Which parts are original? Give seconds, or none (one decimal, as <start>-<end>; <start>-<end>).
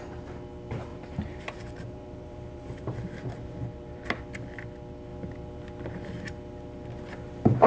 0.0-0.9; 4.2-7.7